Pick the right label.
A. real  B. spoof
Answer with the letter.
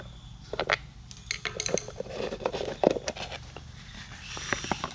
A